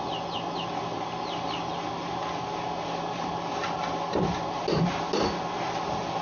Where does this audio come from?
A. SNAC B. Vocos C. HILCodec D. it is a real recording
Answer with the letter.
D